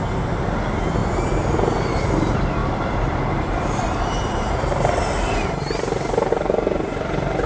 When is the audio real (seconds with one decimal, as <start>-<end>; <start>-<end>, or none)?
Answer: 0.0-2.6; 6.3-7.5